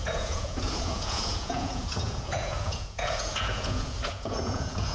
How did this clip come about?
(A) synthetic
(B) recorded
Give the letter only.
A